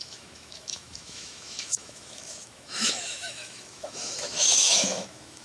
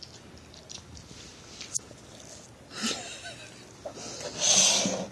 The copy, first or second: first